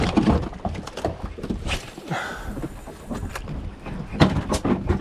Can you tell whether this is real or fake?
real